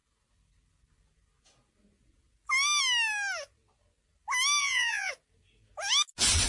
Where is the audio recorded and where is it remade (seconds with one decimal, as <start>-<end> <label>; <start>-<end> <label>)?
0.0-4.6 recorded; 4.6-5.1 remade; 5.1-6.5 recorded